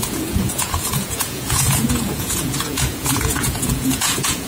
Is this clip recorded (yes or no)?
no